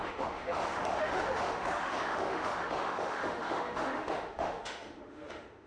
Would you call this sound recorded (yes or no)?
no